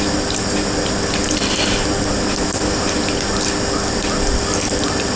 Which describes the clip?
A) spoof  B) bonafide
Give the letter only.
B